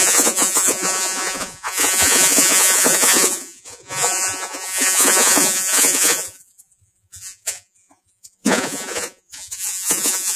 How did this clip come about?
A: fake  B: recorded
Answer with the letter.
A